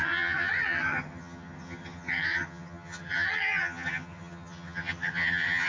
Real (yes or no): no